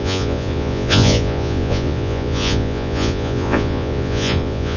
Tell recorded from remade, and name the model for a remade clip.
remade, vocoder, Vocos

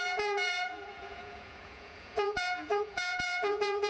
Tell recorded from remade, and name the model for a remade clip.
remade, vocoder, Vocos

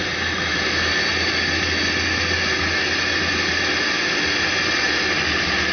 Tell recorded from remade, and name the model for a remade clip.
recorded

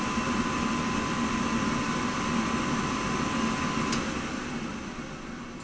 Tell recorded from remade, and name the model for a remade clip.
recorded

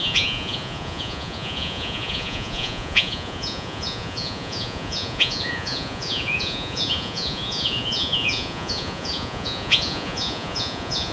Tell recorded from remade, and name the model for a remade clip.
remade, vocoder, Vocos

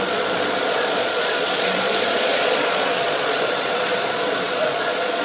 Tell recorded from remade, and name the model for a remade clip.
remade, vocoder, Vocos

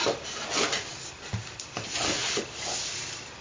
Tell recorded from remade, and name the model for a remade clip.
recorded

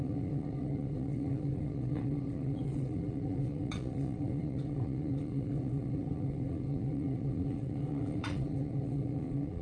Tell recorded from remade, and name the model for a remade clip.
remade, vocoder, Vocos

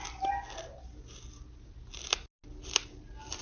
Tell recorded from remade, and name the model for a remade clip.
recorded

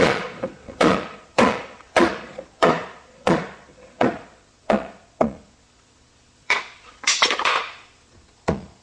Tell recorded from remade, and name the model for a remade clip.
remade, vocoder, Vocos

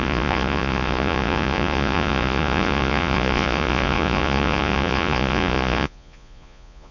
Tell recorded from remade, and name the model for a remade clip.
remade, vocoder, Vocos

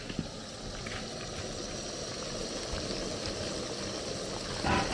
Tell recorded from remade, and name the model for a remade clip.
recorded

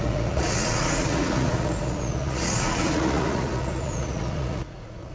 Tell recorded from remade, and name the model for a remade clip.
remade, vocoder, Vocos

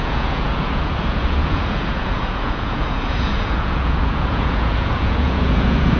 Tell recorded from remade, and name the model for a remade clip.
remade, vocoder, Vocos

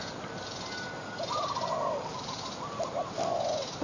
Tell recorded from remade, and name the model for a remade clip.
recorded